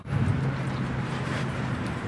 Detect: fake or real fake